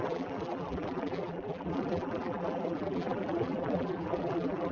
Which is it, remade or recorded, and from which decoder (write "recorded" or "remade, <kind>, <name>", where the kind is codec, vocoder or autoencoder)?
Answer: remade, vocoder, BigVGAN v2